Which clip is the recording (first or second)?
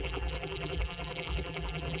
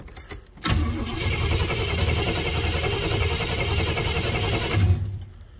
second